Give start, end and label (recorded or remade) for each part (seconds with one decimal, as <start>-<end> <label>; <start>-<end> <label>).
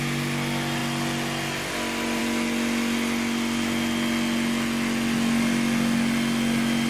0.0-6.9 recorded